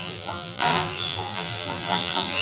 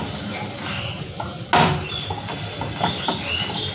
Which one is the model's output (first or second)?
first